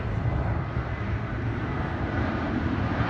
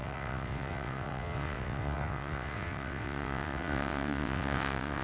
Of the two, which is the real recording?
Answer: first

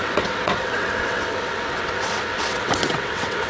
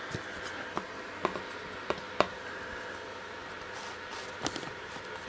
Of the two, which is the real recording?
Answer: second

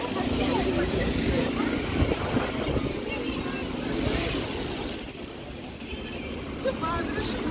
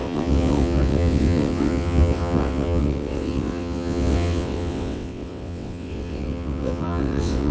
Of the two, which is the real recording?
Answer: first